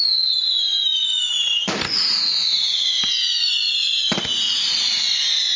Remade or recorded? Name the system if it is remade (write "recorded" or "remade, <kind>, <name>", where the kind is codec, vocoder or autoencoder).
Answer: recorded